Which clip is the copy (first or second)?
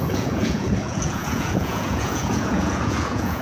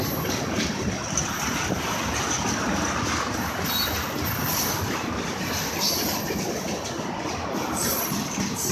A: first